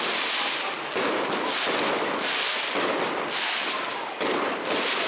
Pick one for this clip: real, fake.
fake